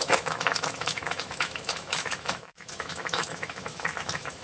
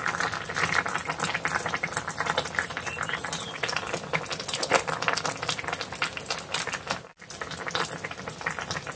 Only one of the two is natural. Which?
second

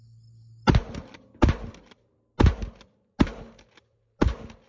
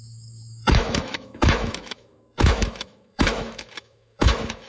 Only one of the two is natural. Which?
first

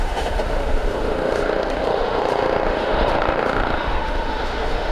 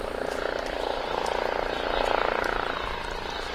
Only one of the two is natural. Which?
second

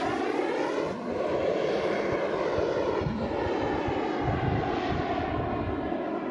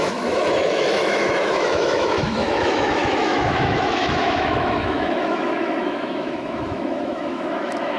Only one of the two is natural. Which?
first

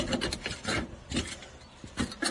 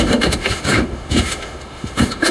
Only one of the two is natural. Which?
first